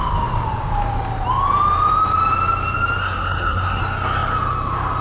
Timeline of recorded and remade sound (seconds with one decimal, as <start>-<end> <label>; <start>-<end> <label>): 0.0-3.0 recorded; 3.0-3.8 remade; 3.8-5.0 recorded